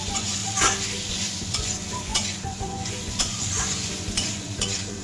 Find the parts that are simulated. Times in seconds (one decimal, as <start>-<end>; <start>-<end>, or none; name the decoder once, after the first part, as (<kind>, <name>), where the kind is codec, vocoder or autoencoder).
0.0-0.4 (vocoder, Vocos); 1.1-5.0